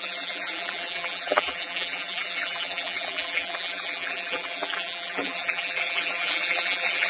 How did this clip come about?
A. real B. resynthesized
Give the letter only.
B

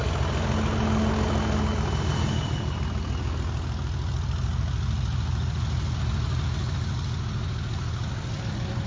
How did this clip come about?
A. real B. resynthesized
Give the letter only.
A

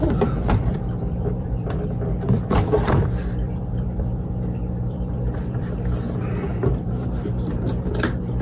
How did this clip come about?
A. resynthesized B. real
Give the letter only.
A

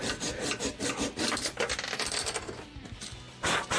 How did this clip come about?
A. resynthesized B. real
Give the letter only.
B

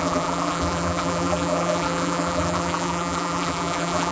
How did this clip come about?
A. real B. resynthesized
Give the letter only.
B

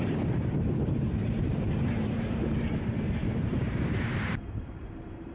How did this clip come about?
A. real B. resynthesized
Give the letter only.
B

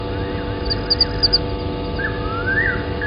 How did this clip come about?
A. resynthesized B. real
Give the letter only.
B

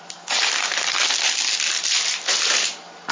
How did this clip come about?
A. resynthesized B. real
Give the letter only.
B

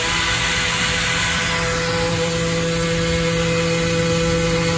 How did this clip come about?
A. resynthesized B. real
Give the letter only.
B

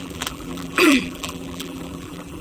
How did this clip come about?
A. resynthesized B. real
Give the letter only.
A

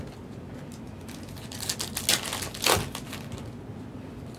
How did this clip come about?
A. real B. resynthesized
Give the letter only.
A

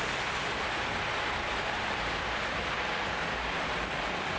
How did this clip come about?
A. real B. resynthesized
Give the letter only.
A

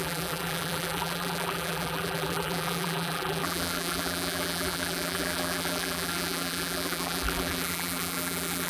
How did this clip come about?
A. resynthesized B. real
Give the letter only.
A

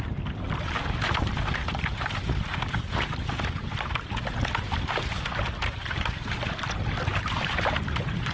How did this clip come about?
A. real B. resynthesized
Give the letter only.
A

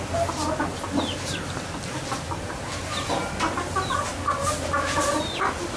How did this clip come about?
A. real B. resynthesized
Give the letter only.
A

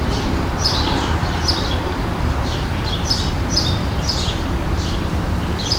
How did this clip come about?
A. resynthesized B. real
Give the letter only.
A